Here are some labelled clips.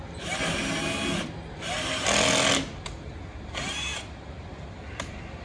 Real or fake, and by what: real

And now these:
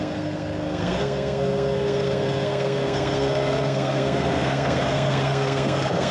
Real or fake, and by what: fake, codec, SNAC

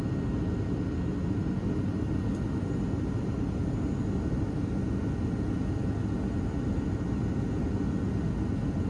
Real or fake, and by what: real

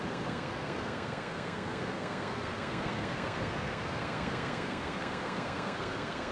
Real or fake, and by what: fake, codec, SNAC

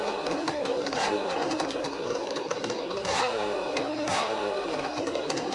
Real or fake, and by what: fake, codec, SNAC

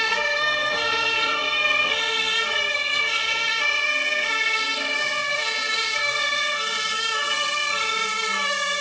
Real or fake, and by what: fake, codec, SNAC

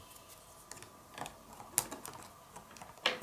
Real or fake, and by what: real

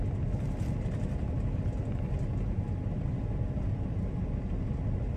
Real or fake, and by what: real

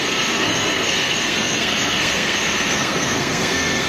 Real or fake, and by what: fake, codec, SNAC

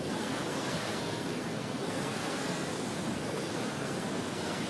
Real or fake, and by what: fake, codec, SNAC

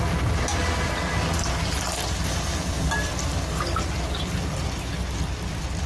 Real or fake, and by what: real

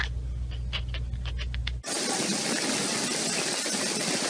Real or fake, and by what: real